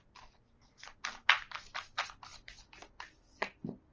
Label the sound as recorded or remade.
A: recorded